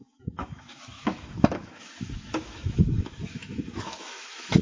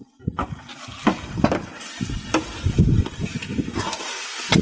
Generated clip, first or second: first